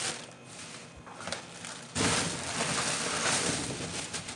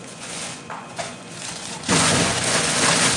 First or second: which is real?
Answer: first